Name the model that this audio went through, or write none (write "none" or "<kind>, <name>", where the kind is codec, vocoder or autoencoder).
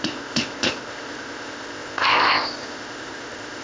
codec, ZipCodec